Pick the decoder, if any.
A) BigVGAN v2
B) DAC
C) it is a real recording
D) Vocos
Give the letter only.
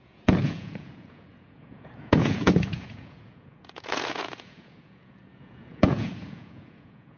D